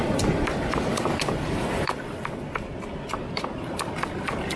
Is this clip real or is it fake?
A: real